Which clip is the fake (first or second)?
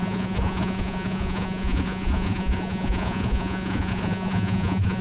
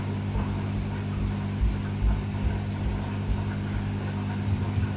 first